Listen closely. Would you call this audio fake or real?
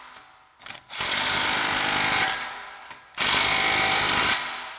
real